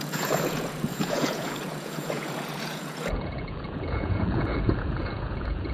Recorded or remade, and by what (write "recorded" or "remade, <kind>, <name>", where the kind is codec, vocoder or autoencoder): remade, vocoder, Vocos